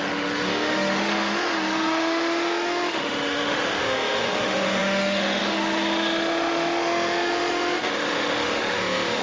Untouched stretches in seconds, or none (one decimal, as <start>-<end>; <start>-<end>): none